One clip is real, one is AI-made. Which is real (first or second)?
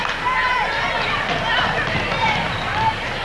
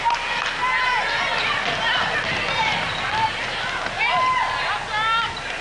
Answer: second